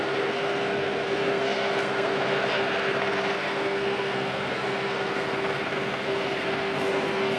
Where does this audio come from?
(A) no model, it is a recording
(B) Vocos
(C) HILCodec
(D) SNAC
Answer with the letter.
D